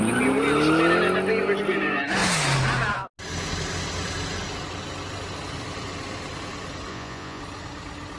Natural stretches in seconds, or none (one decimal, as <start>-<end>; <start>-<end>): 0.0-6.9; 7.4-8.2

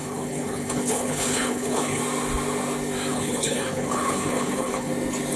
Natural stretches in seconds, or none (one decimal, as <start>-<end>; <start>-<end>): 2.0-3.1; 4.9-5.4

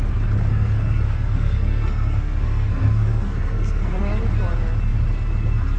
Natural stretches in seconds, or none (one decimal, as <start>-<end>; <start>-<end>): 0.0-0.5; 4.0-5.8

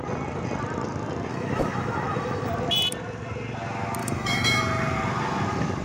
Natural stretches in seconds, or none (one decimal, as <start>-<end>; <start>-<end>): 0.0-1.3; 2.5-4.0; 4.6-5.8

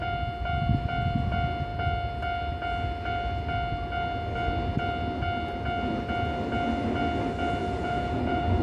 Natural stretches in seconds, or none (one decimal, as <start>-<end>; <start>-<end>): 0.0-7.6

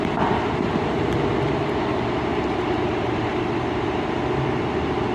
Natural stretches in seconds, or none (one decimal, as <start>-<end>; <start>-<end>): 0.0-2.3; 4.2-5.1

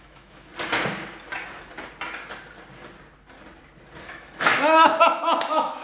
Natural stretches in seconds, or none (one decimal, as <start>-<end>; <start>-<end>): 0.5-4.0